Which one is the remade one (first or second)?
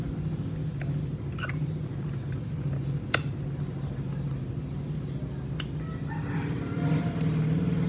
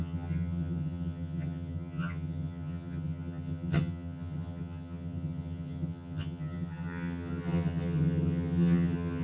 second